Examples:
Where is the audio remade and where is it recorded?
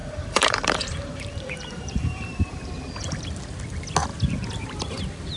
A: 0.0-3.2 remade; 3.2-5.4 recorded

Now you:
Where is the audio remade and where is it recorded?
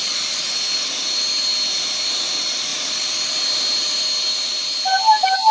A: 0.0-1.0 remade; 1.0-2.7 recorded; 2.7-4.3 remade; 4.3-5.5 recorded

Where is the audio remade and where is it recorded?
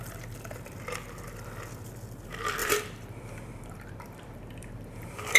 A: 0.0-2.6 recorded; 2.6-5.4 remade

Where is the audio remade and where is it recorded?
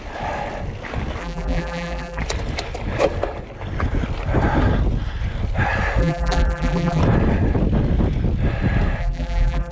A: 0.0-1.2 recorded; 1.2-2.2 remade; 2.2-6.0 recorded; 6.0-7.0 remade; 7.0-9.0 recorded; 9.0-9.7 remade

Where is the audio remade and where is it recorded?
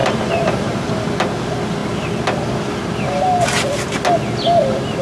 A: 0.0-0.7 remade; 0.7-5.0 recorded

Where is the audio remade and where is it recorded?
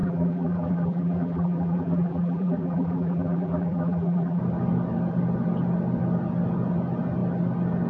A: 0.0-4.4 remade; 4.4-7.9 recorded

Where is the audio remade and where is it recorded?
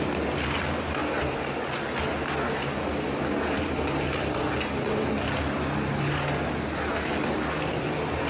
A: 0.0-8.3 recorded